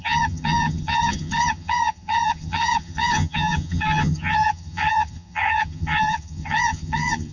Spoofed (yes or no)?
yes